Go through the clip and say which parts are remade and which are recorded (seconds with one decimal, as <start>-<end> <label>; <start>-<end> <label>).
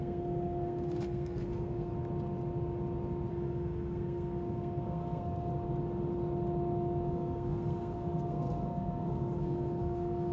0.0-1.9 remade; 1.9-3.3 recorded; 3.3-5.5 remade; 5.5-7.1 recorded; 7.1-10.3 remade